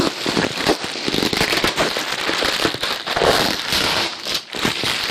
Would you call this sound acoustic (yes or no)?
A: no